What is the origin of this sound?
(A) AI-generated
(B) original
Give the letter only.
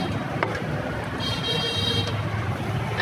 A